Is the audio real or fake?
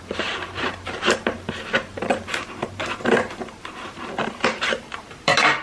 fake